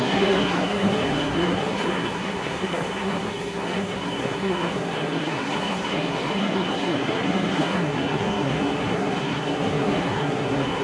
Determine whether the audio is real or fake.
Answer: fake